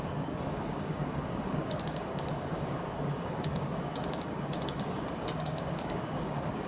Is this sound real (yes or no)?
no